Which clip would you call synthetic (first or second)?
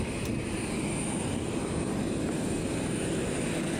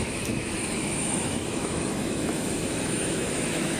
second